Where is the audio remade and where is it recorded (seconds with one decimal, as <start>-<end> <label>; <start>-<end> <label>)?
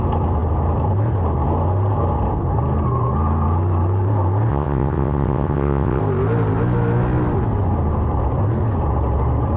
0.0-4.5 recorded; 4.5-6.0 remade; 6.0-9.6 recorded